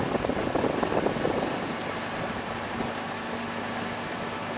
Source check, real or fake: real